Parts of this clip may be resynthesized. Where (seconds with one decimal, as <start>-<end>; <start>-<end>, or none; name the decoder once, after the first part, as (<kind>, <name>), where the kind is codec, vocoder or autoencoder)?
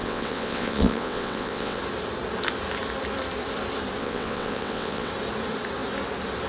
0.0-1.8 (vocoder, WaveNeXt); 4.0-5.1